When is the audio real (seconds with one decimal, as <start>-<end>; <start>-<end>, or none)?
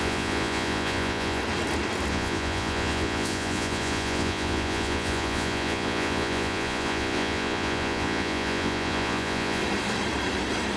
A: 1.4-2.1; 9.6-10.8